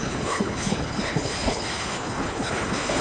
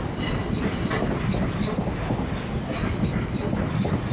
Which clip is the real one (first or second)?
second